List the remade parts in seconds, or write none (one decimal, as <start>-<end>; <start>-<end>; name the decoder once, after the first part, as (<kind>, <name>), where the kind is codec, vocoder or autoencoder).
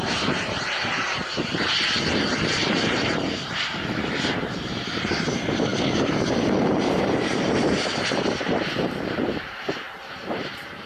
0.0-10.9 (vocoder, BigVGAN v2)